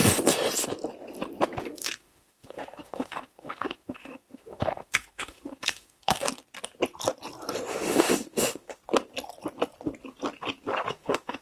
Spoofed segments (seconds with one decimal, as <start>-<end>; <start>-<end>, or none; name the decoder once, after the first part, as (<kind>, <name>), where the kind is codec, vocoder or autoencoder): 1.6-6.3 (autoencoder, DAC-VAE); 7.7-8.8; 10.9-11.4